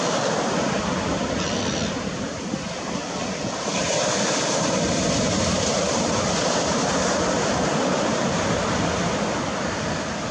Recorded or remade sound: remade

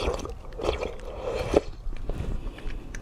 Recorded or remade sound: remade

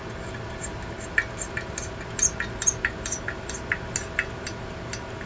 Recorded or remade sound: recorded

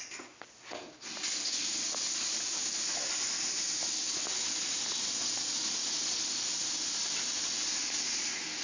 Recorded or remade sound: recorded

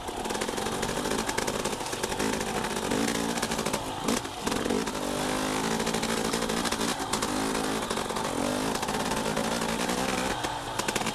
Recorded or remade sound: recorded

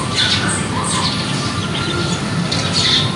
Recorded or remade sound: remade